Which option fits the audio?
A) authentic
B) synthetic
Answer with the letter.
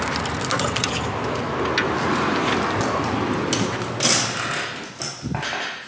A